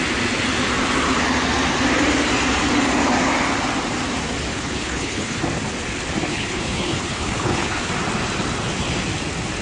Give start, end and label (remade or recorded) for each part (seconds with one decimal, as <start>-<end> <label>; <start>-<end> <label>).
0.0-4.5 recorded; 4.5-5.4 remade; 5.4-6.3 recorded; 6.3-7.9 remade; 7.9-9.6 recorded